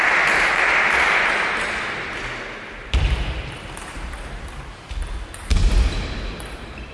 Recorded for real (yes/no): yes